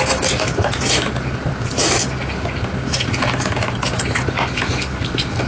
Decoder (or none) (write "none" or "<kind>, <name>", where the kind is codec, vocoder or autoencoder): none